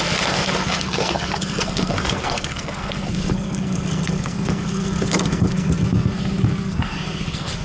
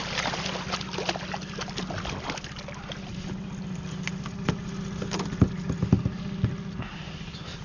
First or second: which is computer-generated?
first